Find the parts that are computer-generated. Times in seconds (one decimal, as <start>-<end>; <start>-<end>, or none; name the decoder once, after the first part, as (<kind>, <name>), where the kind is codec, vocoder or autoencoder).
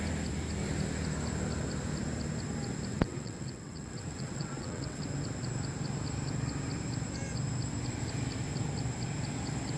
2.9-5.0 (vocoder, WaveNeXt)